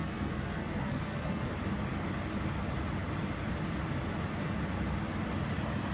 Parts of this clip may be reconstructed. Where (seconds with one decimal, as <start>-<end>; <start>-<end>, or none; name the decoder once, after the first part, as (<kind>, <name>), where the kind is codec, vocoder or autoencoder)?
0.0-1.5 (codec, SNAC)